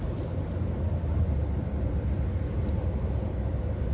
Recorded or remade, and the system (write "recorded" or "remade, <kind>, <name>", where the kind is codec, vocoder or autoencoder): recorded